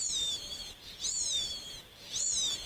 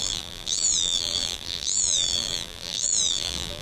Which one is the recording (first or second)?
first